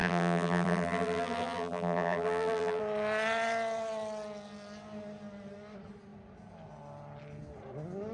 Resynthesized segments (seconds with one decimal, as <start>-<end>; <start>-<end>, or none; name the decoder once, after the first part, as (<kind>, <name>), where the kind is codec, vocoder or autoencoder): 0.0-2.8 (vocoder, BigVGAN v2)